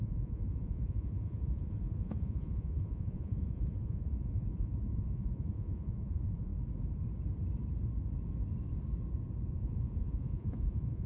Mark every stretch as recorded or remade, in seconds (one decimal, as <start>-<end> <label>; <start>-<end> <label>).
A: 0.0-6.5 remade; 6.5-9.5 recorded; 9.5-11.1 remade